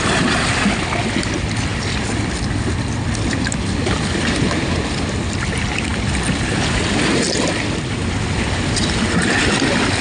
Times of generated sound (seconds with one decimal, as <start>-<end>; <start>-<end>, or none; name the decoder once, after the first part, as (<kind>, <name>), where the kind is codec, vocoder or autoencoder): none